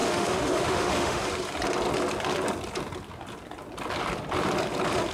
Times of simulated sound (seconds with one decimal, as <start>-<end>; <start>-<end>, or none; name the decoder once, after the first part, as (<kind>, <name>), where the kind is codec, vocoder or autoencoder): 0.0-1.2 (autoencoder, DAC-VAE)